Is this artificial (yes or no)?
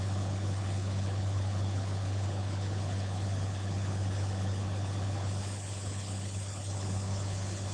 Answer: yes